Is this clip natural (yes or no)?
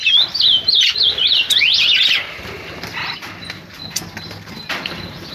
yes